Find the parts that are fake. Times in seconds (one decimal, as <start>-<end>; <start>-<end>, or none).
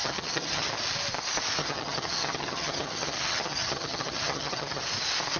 0.0-0.7; 1.6-4.8